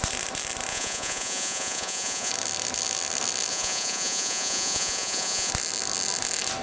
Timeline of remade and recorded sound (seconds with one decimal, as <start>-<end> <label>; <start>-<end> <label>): 0.0-0.7 recorded; 0.7-2.3 remade; 2.3-3.5 recorded; 3.5-5.5 remade; 5.5-6.6 recorded